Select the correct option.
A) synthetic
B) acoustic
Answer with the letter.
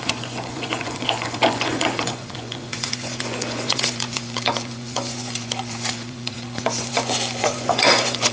A